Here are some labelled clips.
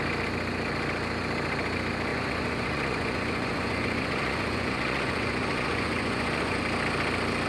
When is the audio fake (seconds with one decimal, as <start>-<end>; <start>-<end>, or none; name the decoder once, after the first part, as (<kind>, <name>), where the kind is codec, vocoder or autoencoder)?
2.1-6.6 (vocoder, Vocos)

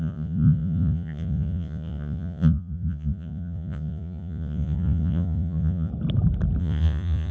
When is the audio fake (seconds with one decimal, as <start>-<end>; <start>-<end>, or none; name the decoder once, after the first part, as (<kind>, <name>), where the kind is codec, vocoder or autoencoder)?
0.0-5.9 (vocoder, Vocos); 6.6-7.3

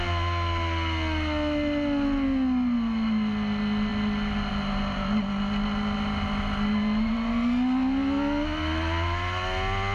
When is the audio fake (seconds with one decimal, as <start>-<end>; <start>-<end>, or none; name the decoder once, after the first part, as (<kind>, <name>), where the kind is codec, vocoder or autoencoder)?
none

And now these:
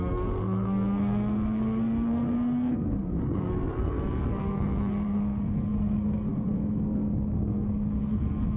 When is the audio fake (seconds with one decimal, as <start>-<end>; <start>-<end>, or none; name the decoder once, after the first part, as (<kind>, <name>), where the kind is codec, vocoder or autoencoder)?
0.0-8.6 (codec, SNAC)

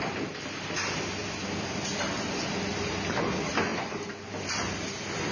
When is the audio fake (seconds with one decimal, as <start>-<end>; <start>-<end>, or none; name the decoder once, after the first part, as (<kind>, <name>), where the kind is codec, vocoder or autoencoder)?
none